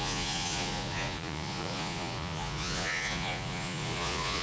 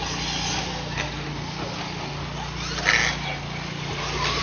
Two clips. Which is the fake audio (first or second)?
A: first